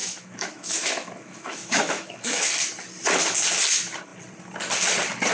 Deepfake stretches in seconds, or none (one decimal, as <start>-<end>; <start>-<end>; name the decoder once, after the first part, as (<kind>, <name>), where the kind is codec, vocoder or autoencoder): 0.0-2.5 (autoencoder, DAC-VAE)

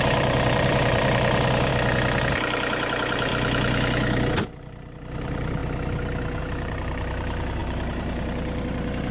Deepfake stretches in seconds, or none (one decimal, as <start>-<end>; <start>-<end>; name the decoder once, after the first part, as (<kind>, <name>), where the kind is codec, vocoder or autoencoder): 0.0-1.7 (vocoder, BigVGAN v2); 2.3-3.3; 4.3-5.6; 6.4-9.1

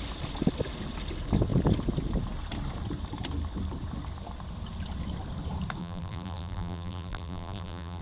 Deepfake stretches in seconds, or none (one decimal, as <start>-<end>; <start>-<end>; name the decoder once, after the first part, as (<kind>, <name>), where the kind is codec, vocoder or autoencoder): 5.8-8.0 (vocoder, BigVGAN v2)

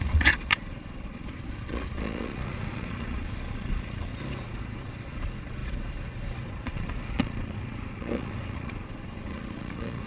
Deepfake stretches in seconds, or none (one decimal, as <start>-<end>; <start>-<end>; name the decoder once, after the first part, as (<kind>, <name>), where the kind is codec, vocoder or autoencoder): 0.0-4.1 (vocoder, Vocos); 4.8-10.1